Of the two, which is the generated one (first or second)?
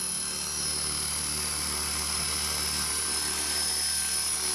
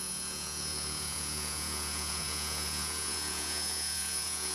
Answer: second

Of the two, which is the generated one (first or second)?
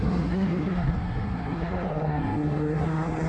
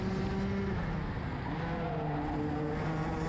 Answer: first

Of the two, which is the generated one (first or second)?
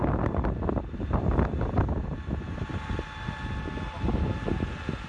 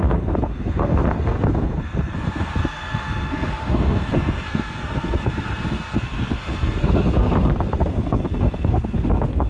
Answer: second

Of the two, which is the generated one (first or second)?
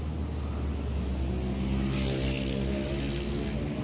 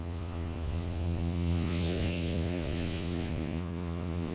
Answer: second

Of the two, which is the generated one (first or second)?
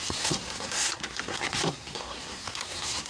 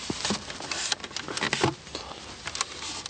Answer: first